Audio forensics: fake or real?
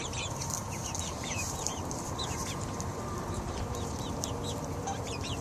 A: fake